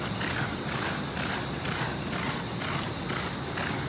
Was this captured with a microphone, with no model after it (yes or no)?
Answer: yes